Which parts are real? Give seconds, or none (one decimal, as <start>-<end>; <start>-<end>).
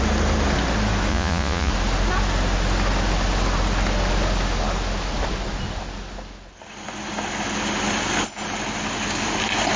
0.0-1.1; 1.7-9.8